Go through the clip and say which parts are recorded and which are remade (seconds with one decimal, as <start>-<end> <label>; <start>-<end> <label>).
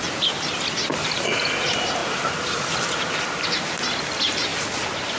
0.0-5.2 recorded